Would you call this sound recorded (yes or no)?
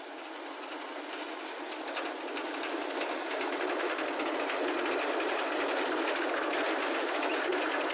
yes